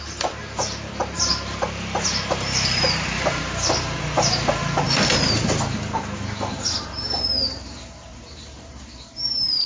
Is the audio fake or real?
fake